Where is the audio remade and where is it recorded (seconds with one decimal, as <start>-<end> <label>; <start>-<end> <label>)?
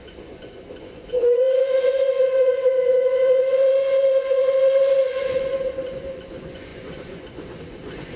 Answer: 0.0-8.2 remade